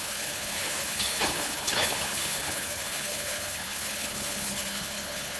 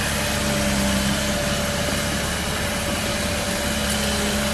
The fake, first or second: first